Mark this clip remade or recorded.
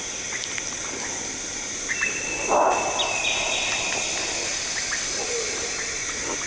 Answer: recorded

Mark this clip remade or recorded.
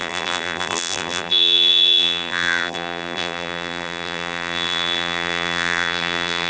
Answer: remade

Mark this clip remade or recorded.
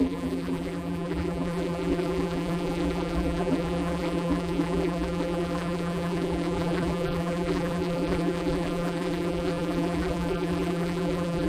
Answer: remade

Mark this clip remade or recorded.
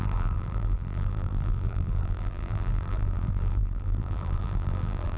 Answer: remade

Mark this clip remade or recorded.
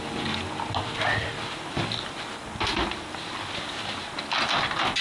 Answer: recorded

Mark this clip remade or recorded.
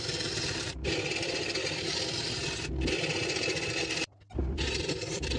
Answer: remade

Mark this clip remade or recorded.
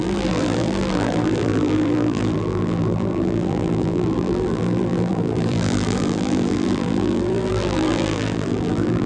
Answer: remade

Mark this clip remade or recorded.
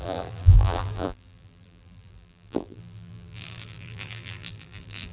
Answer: remade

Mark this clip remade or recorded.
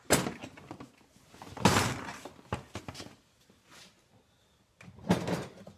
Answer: recorded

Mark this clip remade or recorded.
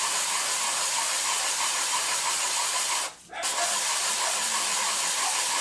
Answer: remade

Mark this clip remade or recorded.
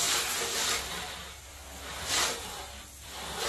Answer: recorded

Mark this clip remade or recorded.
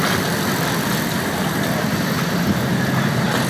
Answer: remade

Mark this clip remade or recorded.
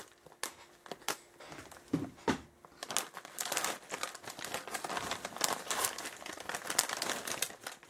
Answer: recorded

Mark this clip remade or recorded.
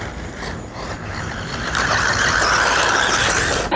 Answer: remade